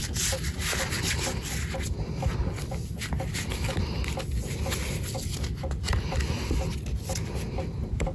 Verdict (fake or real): real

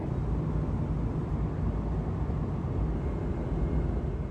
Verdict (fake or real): real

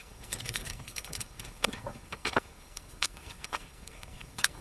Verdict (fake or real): fake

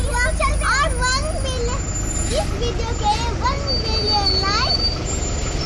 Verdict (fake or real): real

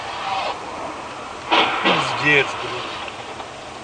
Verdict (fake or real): real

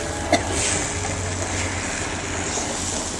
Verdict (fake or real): real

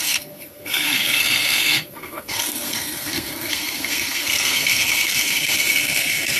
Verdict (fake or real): fake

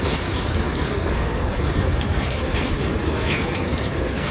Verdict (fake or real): fake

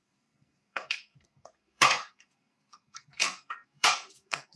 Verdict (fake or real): fake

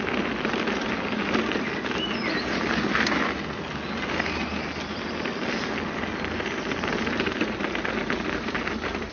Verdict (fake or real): real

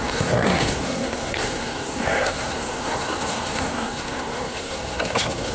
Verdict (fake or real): fake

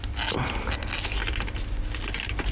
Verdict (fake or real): real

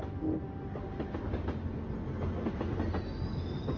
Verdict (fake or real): real